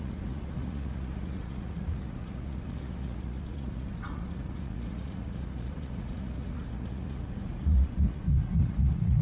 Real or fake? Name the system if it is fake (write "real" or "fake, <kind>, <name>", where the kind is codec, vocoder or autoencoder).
fake, vocoder, Vocos